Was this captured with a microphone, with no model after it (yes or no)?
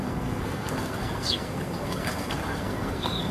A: no